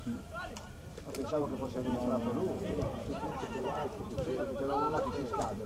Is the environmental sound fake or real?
fake